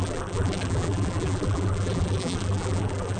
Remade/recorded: remade